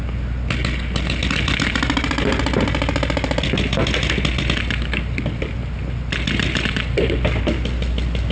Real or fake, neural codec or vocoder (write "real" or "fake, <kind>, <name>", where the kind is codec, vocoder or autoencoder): real